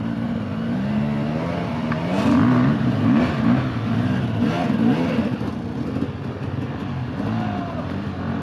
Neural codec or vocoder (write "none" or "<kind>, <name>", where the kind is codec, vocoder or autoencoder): none